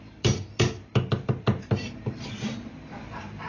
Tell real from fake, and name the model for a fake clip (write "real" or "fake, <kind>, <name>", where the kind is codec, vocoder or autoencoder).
fake, vocoder, BigVGAN v2